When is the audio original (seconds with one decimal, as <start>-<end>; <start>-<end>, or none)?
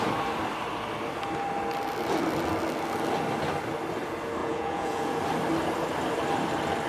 0.0-4.4; 5.2-6.9